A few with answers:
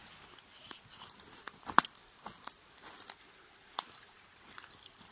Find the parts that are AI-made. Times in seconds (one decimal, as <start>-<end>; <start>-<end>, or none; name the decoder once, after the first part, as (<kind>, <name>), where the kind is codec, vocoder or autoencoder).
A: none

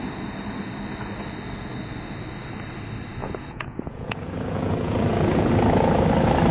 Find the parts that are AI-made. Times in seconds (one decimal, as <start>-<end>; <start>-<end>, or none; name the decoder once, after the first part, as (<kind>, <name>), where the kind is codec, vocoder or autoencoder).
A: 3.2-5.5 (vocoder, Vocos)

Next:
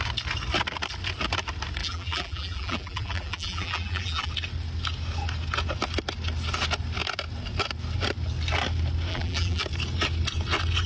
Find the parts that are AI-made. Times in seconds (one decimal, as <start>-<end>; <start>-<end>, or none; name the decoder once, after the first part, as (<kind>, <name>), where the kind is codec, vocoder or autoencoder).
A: 1.8-4.3 (vocoder, BigVGAN v2); 9.1-9.6

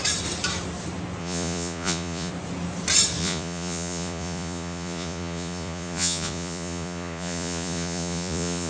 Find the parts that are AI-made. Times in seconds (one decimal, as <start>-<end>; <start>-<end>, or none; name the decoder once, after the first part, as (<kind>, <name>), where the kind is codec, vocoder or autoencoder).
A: 1.2-2.3 (vocoder, Vocos); 3.2-8.7